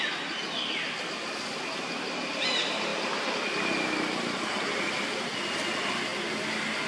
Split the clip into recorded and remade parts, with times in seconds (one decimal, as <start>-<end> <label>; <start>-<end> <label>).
0.0-6.9 recorded